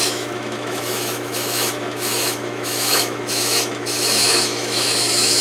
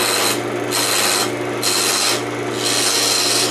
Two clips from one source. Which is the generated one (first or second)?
first